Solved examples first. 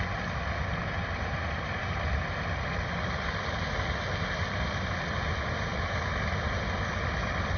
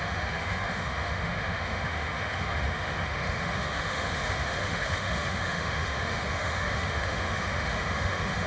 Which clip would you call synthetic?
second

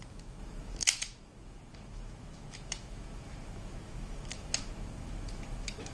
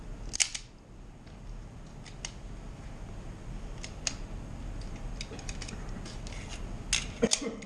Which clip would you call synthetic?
first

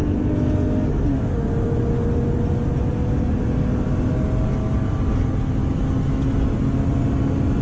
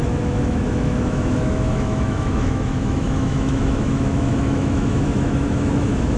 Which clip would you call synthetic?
second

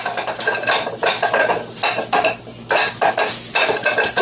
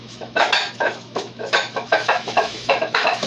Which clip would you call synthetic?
second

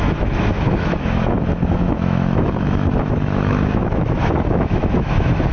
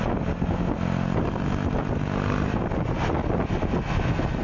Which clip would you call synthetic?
first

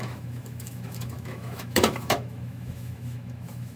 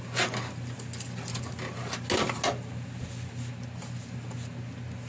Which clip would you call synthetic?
first